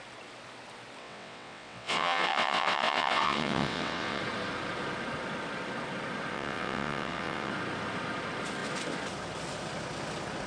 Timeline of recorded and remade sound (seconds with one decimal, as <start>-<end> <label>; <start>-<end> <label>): 0.0-1.0 recorded; 1.0-4.2 remade; 4.2-6.3 recorded; 6.3-7.5 remade; 7.5-10.5 recorded